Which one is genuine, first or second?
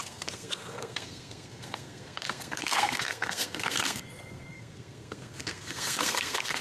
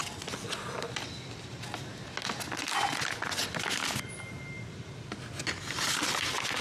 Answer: second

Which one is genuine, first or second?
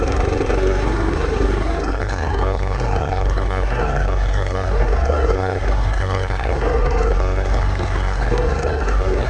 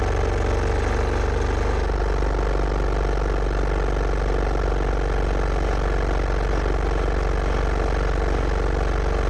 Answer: second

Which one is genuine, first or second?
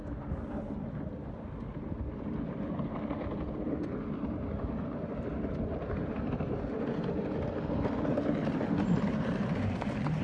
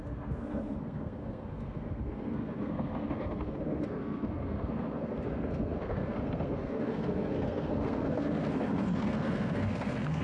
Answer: first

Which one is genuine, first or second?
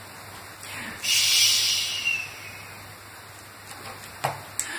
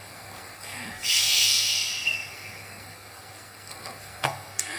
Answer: first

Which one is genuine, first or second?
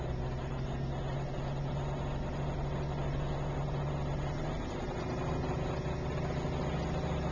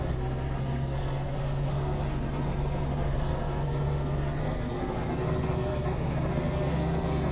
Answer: first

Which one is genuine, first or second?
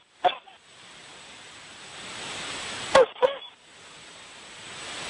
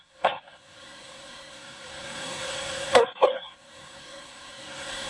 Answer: first